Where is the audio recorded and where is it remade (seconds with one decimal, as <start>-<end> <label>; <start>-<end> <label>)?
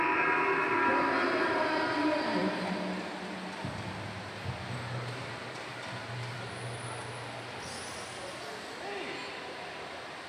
0.0-5.2 recorded; 5.2-5.9 remade; 5.9-10.3 recorded